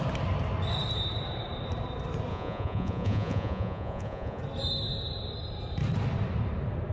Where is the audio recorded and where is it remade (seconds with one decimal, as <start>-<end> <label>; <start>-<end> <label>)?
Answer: 0.0-2.3 recorded; 2.3-4.4 remade; 4.4-6.9 recorded